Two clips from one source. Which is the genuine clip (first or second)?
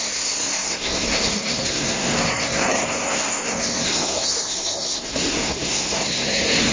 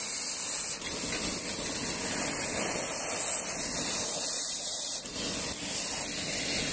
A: second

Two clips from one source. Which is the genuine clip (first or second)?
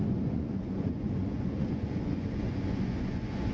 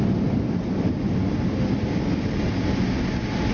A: second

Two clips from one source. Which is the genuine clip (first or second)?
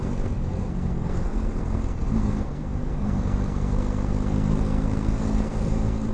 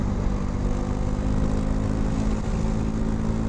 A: second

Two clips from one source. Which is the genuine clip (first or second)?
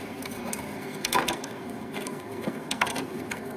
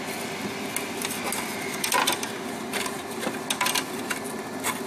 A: second